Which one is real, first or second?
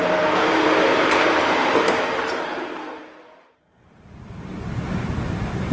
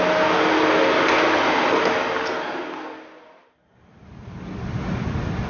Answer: second